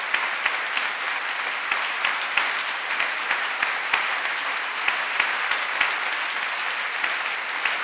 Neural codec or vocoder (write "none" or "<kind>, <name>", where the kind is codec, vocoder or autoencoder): none